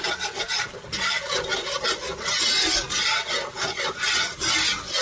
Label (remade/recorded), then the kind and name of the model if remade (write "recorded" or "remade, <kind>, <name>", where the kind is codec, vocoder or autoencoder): recorded